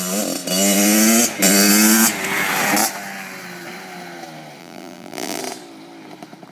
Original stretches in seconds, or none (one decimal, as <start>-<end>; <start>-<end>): 0.0-4.6; 5.4-6.5